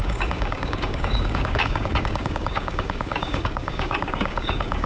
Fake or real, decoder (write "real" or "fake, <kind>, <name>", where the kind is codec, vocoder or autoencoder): fake, codec, DAC